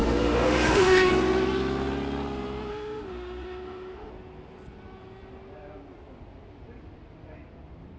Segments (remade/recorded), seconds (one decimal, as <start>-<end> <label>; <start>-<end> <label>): 0.0-1.1 remade; 1.1-2.7 recorded; 2.7-4.1 remade; 4.1-8.0 recorded